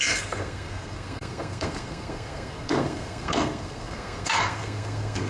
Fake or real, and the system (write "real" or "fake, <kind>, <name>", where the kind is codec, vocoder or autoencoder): fake, codec, SNAC